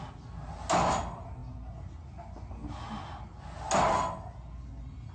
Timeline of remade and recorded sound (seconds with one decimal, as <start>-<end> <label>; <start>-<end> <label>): 0.0-5.1 recorded